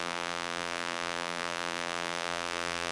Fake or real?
fake